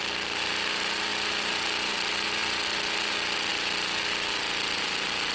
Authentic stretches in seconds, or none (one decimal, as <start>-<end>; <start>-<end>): 0.0-5.3

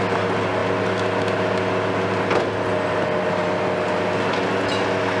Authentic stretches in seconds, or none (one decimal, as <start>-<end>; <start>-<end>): 0.0-5.2

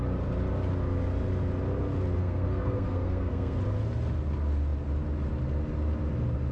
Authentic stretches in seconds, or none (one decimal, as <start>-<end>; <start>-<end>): 0.0-2.2; 3.6-6.5

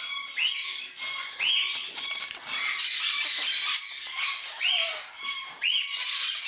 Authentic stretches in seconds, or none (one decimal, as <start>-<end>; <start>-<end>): 0.0-1.2; 2.2-6.5